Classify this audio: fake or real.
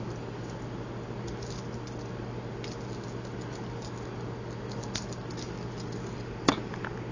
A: real